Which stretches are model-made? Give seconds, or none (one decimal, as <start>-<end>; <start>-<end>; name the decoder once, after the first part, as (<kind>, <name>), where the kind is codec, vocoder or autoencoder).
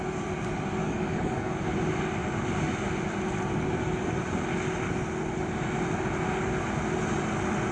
0.8-1.6 (codec, DAC)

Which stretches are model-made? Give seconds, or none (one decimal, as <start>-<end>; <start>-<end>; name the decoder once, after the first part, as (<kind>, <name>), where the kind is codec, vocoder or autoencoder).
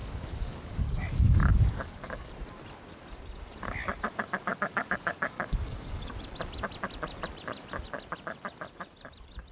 0.0-2.3 (codec, DAC); 4.5-6.1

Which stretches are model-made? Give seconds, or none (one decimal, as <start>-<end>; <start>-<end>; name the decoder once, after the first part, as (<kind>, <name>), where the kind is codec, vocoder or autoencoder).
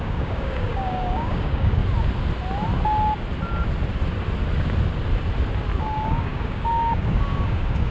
0.0-1.8 (codec, DAC); 5.8-7.9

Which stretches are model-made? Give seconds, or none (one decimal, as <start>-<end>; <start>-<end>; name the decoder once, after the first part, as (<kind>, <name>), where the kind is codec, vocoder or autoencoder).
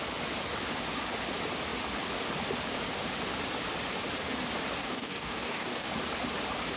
4.8-5.9 (codec, DAC)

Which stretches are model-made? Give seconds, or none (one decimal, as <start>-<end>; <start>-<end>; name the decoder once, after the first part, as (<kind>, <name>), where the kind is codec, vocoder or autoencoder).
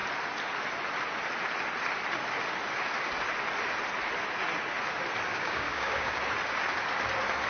5.3-6.2 (codec, DAC)